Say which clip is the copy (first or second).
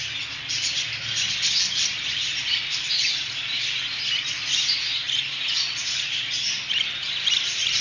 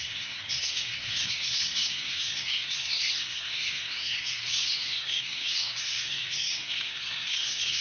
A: second